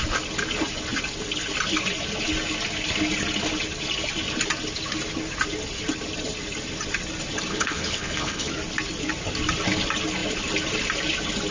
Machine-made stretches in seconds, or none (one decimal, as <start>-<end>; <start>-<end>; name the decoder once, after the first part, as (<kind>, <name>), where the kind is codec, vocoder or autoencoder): 7.5-8.5 (codec, HILCodec)